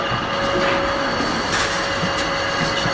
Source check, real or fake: real